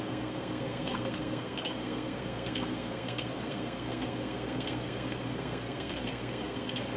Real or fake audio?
fake